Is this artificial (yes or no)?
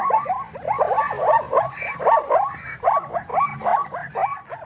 no